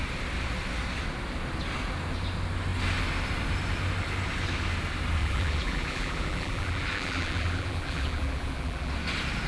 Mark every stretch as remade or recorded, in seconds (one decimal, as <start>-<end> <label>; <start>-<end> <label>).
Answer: 0.0-5.2 recorded; 5.2-8.9 remade; 8.9-9.5 recorded